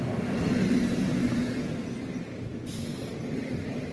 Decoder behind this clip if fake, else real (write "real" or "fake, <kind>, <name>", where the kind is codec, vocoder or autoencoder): real